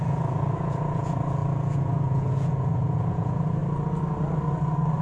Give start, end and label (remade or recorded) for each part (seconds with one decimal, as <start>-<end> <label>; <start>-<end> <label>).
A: 0.0-3.6 remade; 3.6-5.0 recorded